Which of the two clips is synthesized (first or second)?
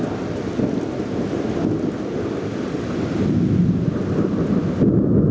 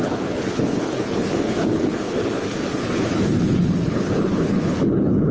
second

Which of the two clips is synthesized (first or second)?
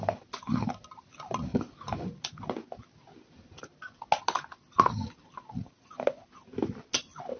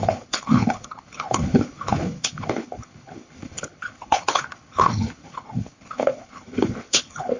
second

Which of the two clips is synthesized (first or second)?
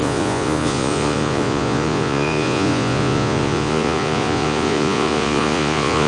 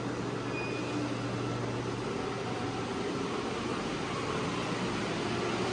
first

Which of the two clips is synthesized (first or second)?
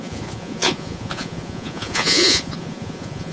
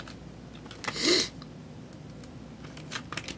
first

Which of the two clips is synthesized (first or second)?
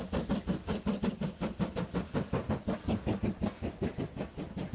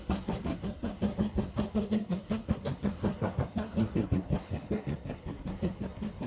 second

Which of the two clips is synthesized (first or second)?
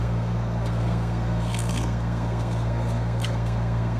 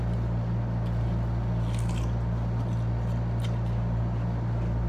first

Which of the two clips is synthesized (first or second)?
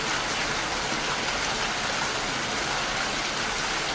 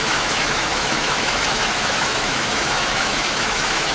second